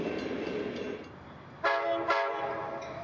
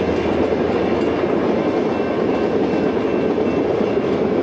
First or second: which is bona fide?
second